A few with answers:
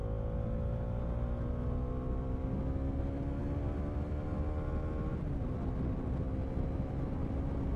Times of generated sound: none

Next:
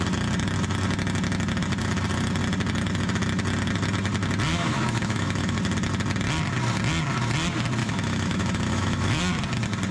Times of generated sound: 4.5-5.6 (autoencoder, DAC-VAE); 7.8-9.2

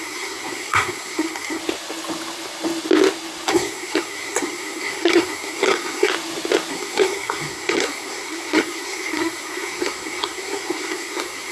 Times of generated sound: 0.0-1.6 (codec, SNAC); 3.5-6.1; 6.7-11.5

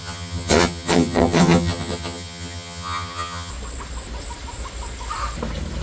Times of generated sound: 0.0-3.5 (vocoder, HiFi-GAN)

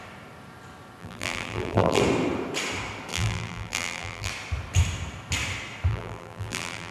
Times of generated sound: 1.0-2.0 (vocoder, BigVGAN v2); 3.1-4.3; 5.9-6.9

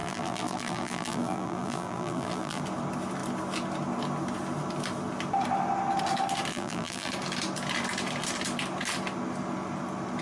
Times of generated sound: 0.0-2.6 (vocoder, BigVGAN v2); 6.5-7.1

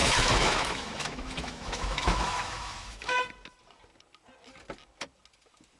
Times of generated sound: 0.0-3.2 (autoencoder, DAC-VAE)

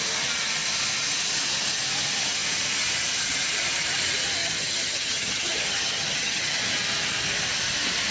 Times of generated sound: 4.4-6.6 (vocoder, HiFi-GAN)